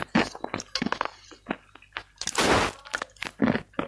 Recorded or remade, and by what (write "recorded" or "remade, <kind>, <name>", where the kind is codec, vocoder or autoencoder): recorded